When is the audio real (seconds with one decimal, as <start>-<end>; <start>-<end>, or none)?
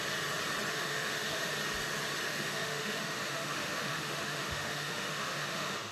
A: 0.0-0.7; 1.5-2.2